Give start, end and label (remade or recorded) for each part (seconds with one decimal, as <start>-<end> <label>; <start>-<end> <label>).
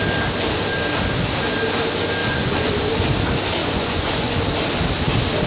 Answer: 0.0-2.2 recorded; 2.2-2.7 remade; 2.7-3.6 recorded; 3.6-4.4 remade; 4.4-5.5 recorded